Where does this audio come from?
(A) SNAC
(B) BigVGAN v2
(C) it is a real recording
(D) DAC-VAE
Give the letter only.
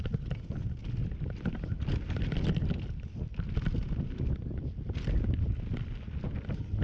C